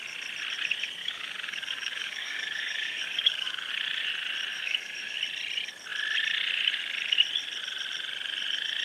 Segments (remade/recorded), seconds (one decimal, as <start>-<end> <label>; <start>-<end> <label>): 0.0-1.0 recorded; 1.0-3.7 remade; 3.7-4.5 recorded; 4.5-5.2 remade; 5.2-8.8 recorded